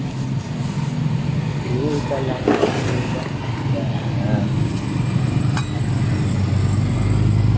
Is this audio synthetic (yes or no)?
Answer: no